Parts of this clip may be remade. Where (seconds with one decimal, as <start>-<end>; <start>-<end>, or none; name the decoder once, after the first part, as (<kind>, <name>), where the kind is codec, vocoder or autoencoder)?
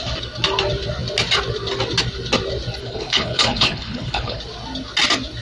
2.8-4.4 (codec, HILCodec)